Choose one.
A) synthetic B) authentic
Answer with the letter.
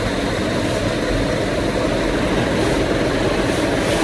B